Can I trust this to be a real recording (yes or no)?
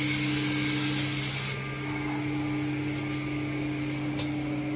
yes